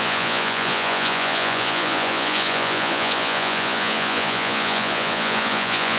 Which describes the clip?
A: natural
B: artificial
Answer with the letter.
B